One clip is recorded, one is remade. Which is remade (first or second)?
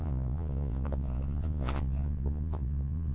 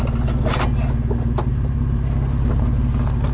first